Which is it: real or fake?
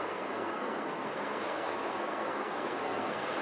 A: fake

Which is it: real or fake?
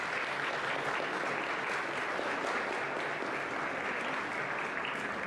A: real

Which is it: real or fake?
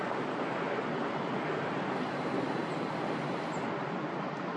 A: real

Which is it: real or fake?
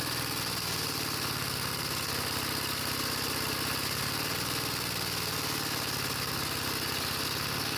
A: real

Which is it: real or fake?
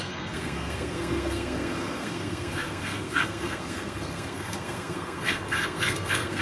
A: fake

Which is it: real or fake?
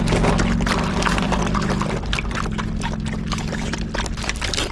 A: real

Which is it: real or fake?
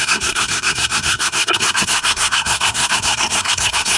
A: fake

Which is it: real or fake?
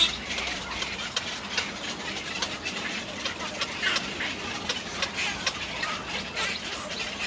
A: real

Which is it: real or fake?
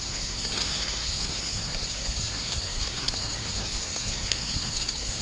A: fake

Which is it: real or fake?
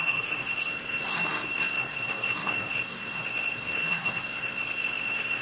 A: fake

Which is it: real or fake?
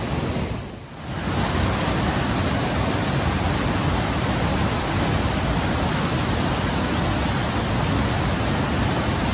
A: real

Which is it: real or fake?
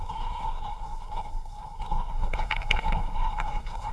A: fake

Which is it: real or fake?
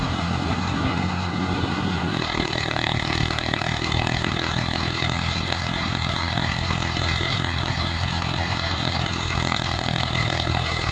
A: fake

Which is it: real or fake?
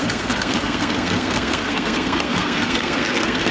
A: fake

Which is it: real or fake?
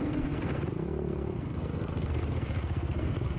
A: fake